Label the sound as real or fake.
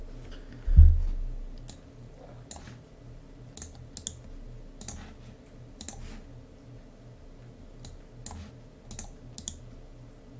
real